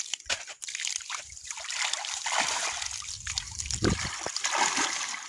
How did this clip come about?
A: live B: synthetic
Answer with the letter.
A